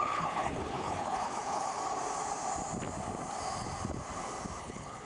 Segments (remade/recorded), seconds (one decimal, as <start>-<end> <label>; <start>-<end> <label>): 0.0-1.8 remade; 1.8-4.6 recorded; 4.6-5.1 remade